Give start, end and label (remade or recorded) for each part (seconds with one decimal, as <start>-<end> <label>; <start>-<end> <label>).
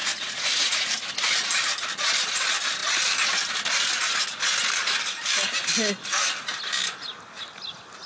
0.0-1.1 remade; 1.1-8.1 recorded